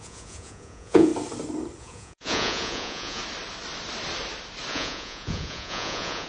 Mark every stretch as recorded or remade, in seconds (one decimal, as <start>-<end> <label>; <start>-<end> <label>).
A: 0.0-1.1 remade; 1.1-1.8 recorded; 1.8-3.2 remade; 3.2-4.7 recorded; 4.7-6.3 remade